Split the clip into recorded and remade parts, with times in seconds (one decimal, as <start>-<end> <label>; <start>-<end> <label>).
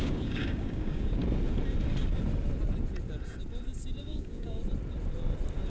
0.0-1.2 remade; 1.2-4.0 recorded; 4.0-4.6 remade; 4.6-5.7 recorded